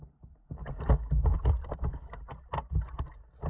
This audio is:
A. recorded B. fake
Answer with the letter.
A